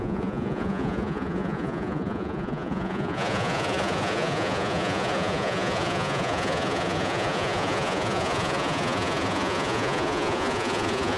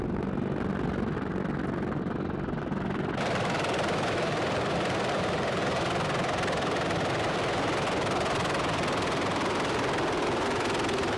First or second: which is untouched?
second